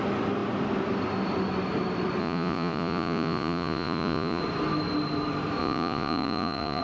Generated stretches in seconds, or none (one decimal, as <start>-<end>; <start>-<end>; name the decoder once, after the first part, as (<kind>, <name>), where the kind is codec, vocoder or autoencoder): 2.2-4.4 (vocoder, Vocos); 5.6-6.8